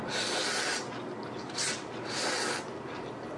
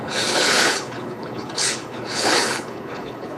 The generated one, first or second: second